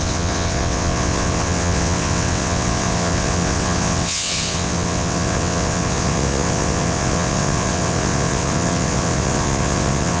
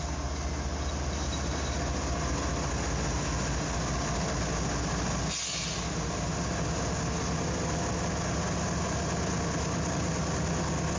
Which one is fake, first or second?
first